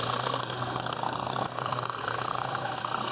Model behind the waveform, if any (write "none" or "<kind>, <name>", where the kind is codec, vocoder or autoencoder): codec, SNAC